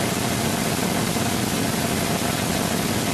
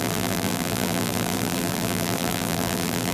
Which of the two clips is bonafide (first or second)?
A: first